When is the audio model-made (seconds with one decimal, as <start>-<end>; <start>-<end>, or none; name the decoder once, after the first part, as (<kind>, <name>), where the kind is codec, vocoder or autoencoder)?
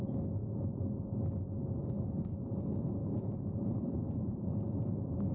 3.0-5.3 (vocoder, BigVGAN v2)